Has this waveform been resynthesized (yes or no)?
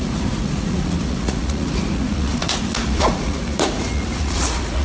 yes